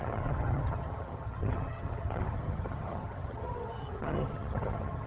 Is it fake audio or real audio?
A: fake